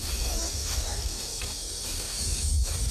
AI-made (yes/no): yes